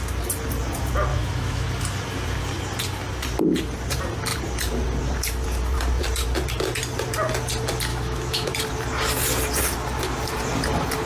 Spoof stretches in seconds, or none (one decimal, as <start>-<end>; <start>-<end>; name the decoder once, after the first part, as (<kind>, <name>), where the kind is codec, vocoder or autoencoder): 1.1-1.7 (autoencoder, DAC-VAE); 7.9-8.5